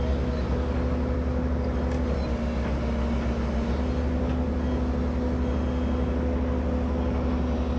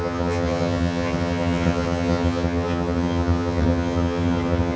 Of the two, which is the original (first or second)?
first